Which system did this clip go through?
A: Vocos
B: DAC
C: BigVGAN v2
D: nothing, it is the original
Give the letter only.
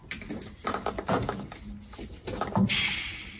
D